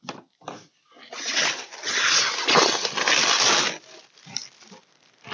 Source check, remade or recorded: recorded